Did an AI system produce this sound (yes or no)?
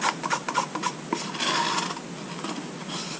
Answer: no